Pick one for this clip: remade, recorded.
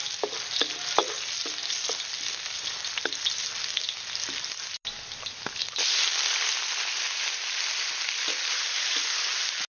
recorded